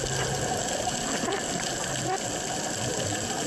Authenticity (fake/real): real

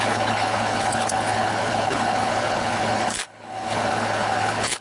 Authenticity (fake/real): fake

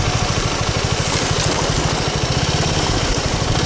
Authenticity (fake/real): real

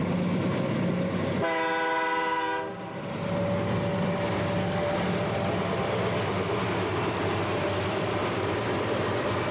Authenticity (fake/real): real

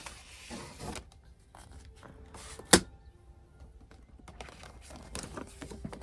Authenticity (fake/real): real